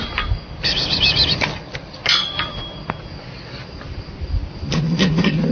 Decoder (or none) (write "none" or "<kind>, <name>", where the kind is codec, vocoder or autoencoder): none